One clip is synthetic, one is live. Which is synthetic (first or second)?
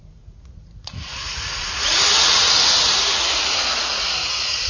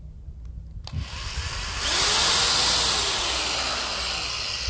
first